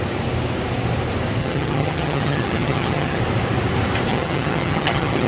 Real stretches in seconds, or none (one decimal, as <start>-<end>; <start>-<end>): 0.0-1.4; 3.2-4.1